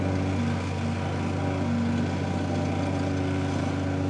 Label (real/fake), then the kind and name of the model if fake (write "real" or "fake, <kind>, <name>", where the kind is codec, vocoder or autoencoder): real